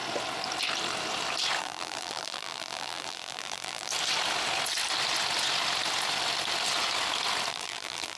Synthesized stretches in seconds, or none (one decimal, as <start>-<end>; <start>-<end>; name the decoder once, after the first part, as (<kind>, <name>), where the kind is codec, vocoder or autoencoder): 1.6-3.9 (vocoder, BigVGAN v2); 7.5-8.2